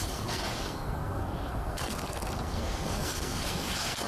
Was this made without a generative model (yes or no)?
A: no